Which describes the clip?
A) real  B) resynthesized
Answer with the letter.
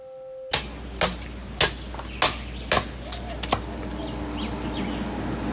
A